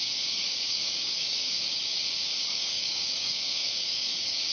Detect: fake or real fake